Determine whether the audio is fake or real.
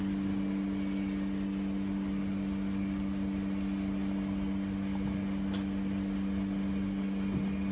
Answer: real